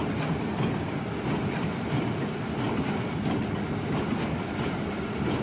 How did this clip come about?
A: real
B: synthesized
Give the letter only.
A